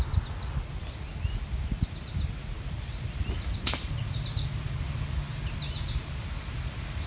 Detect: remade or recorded recorded